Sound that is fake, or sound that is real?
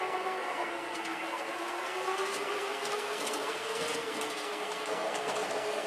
fake